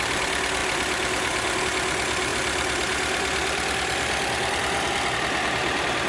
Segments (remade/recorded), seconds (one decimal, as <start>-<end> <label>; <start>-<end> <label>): 0.0-0.6 recorded; 0.6-1.6 remade; 1.6-2.3 recorded; 2.3-5.1 remade; 5.1-6.1 recorded